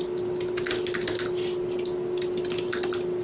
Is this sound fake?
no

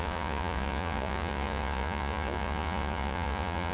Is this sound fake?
yes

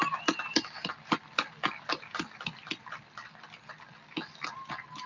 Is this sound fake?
no